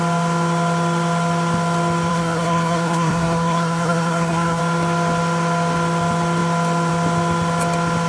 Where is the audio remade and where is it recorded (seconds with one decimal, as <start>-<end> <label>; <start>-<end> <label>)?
0.0-2.1 recorded; 2.1-4.6 remade; 4.6-8.1 recorded